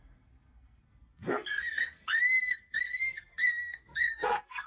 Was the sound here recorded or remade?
remade